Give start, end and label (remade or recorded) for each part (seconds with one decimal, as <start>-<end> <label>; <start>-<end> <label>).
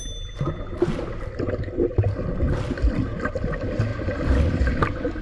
0.0-3.9 recorded; 3.9-4.6 remade; 4.6-5.2 recorded